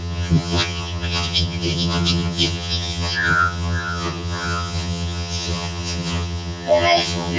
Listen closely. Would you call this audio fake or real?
fake